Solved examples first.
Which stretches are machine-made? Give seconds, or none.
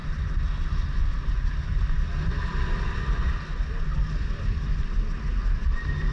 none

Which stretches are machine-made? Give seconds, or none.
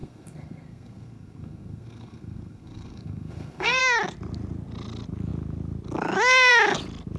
0.0-3.8 (codec, SNAC)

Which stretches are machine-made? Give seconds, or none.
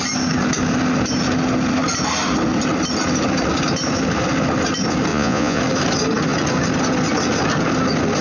5.1-5.6 (vocoder, Vocos)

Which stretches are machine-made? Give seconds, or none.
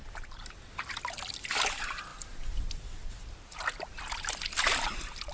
none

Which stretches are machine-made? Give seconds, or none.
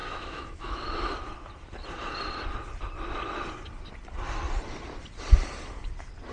0.0-0.8 (autoencoder, DAC-VAE)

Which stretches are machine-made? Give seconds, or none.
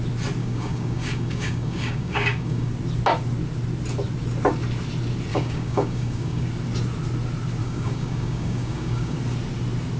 0.4-2.7 (codec, DAC); 5.3-6.4; 7.6-9.2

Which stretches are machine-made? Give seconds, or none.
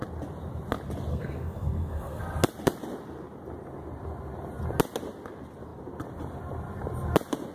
1.1-2.2 (codec, SNAC)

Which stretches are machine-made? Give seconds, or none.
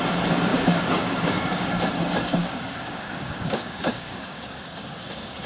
0.5-1.8 (codec, DAC); 2.4-5.5